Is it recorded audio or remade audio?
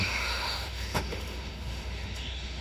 remade